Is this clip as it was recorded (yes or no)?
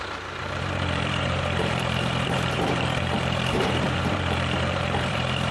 no